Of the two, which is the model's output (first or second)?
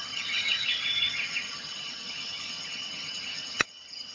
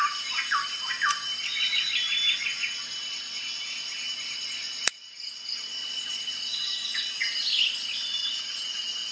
first